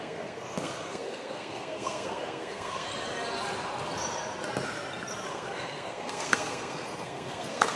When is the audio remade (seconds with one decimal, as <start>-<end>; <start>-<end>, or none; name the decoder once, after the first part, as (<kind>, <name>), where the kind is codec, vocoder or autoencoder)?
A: 0.0-2.9 (codec, SNAC); 5.3-7.8